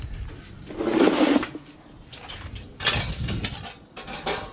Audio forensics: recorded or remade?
recorded